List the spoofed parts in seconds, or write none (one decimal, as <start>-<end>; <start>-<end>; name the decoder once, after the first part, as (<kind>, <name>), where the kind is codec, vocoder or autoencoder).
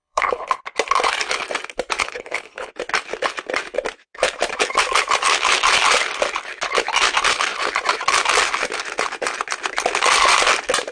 0.0-0.6 (codec, HILCodec); 2.0-2.7